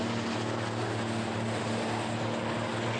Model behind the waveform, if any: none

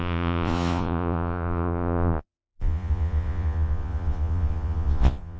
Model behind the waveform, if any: vocoder, Vocos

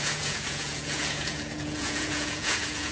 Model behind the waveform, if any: vocoder, Vocos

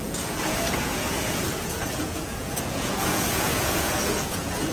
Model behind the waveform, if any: vocoder, Vocos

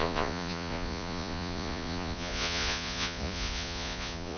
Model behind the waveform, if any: vocoder, Vocos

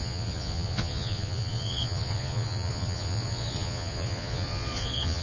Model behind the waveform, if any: vocoder, Vocos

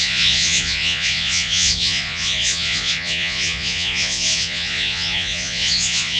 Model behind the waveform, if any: vocoder, Vocos